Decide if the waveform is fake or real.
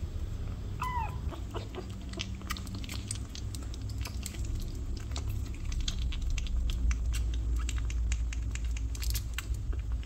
real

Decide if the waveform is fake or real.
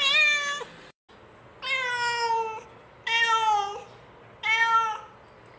real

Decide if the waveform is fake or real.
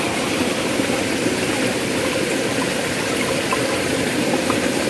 real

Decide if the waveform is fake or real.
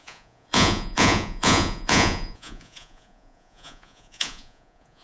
fake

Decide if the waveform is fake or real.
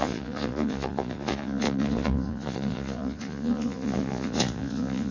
fake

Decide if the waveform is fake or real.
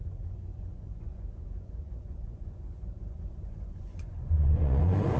fake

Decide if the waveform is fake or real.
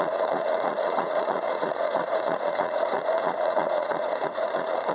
fake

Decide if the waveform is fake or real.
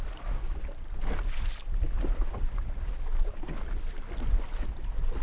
real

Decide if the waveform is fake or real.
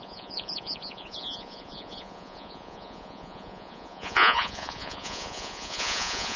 fake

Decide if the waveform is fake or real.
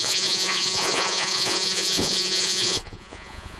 fake